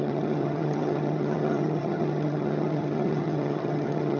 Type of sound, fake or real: fake